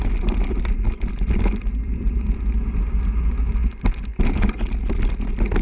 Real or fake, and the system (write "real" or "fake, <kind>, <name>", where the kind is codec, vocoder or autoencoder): real